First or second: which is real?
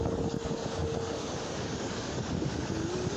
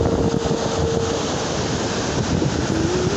second